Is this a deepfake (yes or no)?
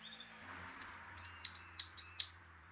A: yes